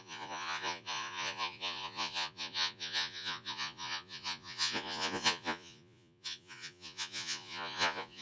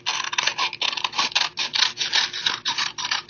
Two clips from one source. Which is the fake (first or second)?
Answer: first